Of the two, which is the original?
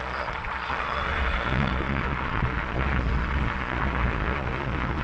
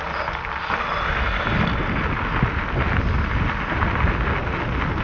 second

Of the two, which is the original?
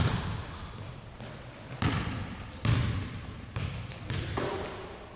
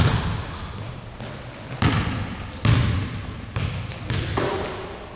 second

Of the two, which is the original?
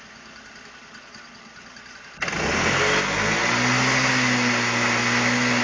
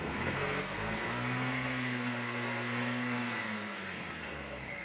first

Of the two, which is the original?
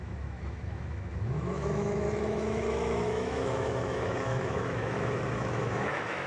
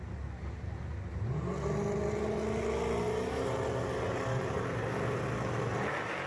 second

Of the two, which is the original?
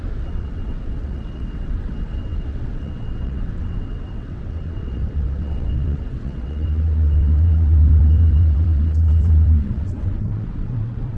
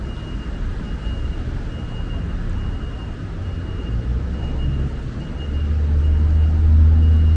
second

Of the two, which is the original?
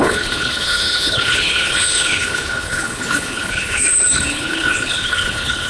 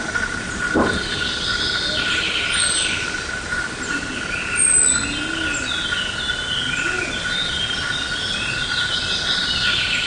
second